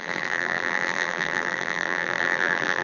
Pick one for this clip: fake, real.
fake